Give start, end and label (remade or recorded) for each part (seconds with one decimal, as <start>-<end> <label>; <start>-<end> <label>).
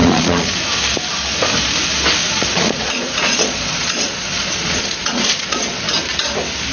0.0-0.6 remade; 0.6-2.2 recorded; 2.2-5.8 remade; 5.8-6.7 recorded